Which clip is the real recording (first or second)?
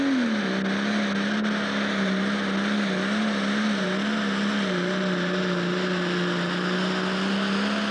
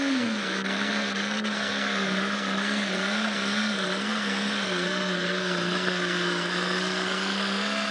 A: first